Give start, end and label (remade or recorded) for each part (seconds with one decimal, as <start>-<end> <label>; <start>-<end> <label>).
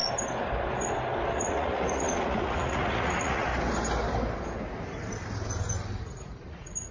0.0-1.3 recorded; 1.3-3.5 remade; 3.5-6.0 recorded; 6.0-6.9 remade